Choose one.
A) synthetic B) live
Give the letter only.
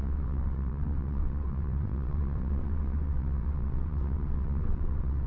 A